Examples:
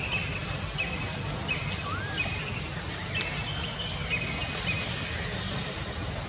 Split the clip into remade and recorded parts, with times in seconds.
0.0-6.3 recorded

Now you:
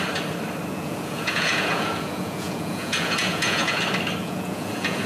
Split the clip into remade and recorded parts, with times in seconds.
0.0-0.7 recorded; 0.7-3.8 remade; 3.8-4.2 recorded; 4.2-5.1 remade